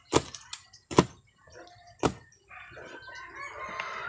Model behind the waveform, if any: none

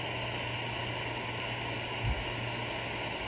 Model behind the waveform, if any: none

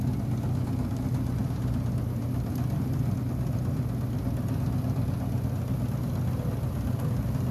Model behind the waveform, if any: none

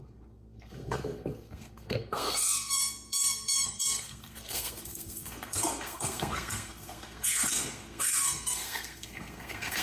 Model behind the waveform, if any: codec, SNAC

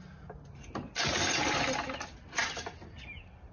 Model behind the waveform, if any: none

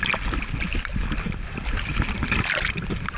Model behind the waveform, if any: none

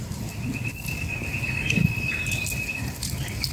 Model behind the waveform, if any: none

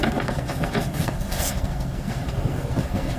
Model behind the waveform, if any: codec, SNAC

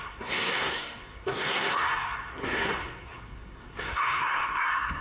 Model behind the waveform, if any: codec, SNAC